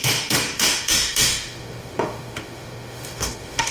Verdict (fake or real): fake